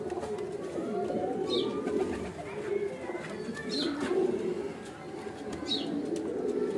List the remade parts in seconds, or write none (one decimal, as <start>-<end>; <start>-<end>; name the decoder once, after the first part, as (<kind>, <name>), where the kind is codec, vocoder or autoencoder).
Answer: none